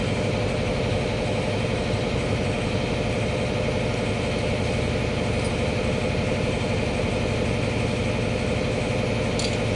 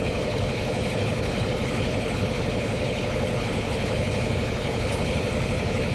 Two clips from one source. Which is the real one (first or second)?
first